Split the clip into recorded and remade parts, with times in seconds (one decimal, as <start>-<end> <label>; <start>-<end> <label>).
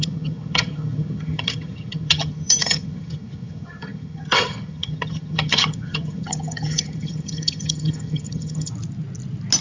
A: 0.0-8.7 remade; 8.7-9.6 recorded